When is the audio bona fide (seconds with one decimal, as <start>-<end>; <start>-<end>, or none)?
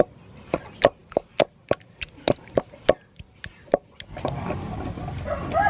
0.0-5.7